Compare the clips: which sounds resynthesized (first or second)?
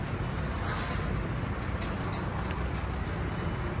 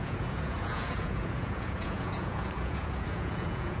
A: second